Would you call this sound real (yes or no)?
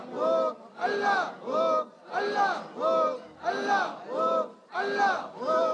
yes